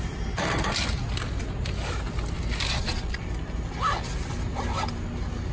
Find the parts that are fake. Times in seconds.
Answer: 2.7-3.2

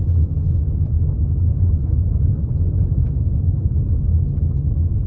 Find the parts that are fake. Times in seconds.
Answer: 1.5-2.9